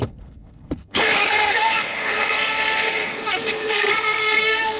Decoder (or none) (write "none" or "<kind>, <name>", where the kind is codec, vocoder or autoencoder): codec, SNAC